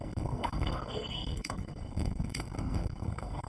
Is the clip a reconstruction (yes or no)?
yes